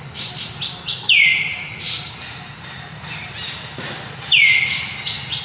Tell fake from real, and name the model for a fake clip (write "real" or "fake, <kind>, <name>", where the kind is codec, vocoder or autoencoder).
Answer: real